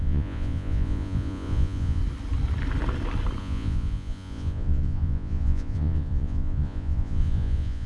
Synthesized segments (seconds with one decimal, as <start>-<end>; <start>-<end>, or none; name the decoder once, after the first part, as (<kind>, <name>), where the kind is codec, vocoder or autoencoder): 0.0-2.0 (vocoder, Vocos); 3.4-7.9